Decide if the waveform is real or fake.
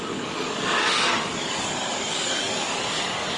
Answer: fake